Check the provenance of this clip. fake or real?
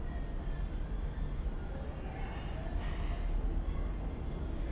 real